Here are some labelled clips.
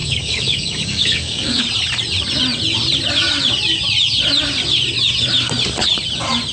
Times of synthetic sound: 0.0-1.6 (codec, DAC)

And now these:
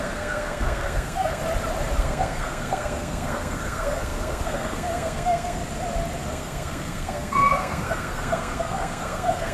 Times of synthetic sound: 0.0-1.4 (codec, SNAC); 2.0-5.6; 6.3-9.5